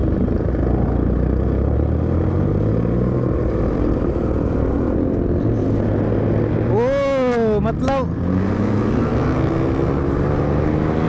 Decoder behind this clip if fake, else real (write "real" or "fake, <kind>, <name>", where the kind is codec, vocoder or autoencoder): real